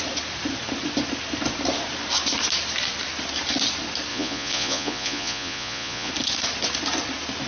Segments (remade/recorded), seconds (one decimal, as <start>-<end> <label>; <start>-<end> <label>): 0.0-4.1 recorded; 4.1-6.1 remade; 6.1-7.5 recorded